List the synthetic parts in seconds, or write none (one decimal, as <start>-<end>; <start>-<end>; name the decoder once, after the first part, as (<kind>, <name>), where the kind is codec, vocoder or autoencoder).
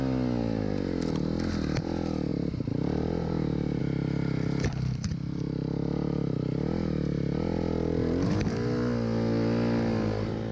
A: 2.3-3.8 (vocoder, BigVGAN v2)